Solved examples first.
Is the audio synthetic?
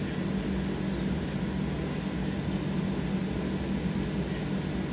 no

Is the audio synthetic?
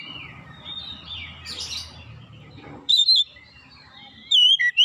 yes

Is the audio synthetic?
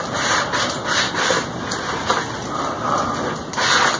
no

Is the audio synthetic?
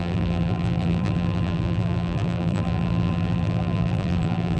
yes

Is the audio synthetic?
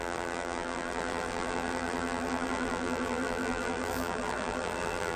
yes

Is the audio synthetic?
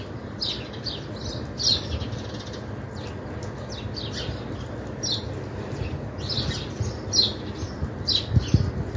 no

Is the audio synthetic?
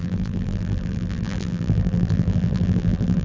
yes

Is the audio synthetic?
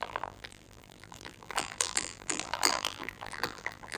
yes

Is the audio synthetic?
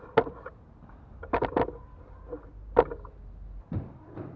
no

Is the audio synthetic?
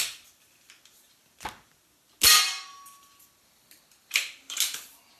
no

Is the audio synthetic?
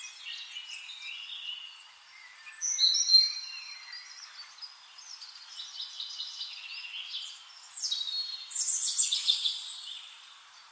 no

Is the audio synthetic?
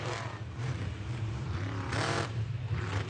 yes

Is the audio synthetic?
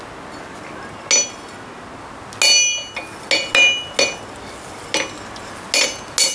no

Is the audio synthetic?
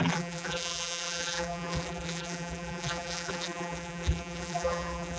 yes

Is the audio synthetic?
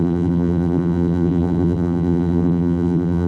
yes